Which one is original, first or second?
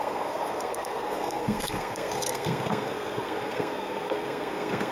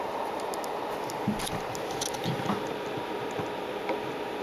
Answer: second